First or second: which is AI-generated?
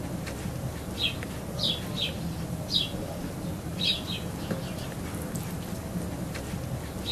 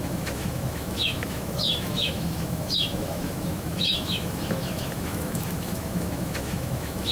second